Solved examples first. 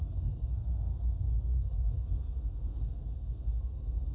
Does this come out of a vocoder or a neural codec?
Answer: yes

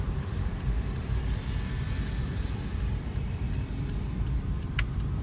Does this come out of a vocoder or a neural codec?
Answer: yes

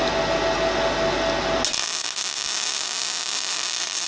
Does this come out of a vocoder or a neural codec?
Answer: no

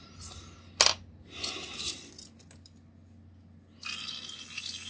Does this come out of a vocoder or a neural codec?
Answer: no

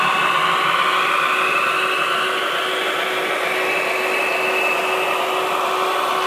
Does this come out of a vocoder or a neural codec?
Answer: no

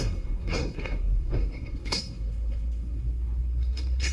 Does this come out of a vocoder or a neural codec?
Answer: yes